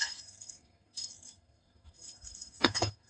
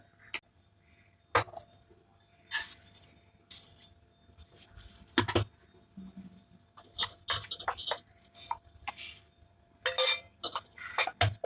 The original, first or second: second